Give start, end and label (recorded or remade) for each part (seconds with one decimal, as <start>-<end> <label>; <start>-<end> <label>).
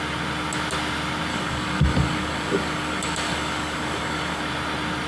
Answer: 0.0-1.3 recorded; 1.3-4.4 remade; 4.4-5.1 recorded